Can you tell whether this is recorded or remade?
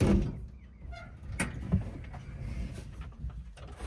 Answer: recorded